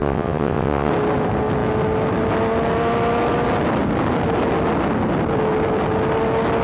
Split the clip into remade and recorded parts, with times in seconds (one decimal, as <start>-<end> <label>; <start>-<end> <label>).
0.0-0.9 remade; 0.9-6.6 recorded